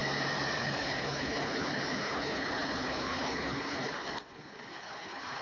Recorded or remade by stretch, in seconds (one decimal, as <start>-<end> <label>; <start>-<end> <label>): 0.0-0.6 recorded; 0.6-5.4 remade